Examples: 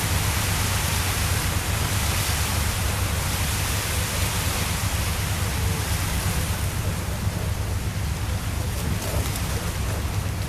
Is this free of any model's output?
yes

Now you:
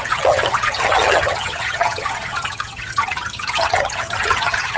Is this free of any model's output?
no